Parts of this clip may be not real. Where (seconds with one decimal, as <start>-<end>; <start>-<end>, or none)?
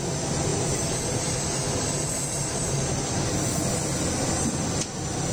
0.5-3.7